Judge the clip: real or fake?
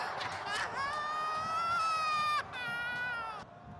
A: real